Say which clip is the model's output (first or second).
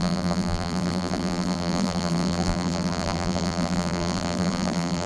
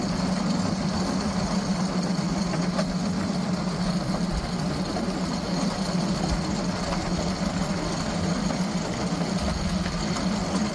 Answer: first